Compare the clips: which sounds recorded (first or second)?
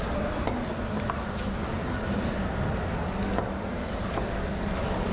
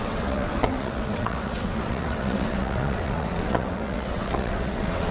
first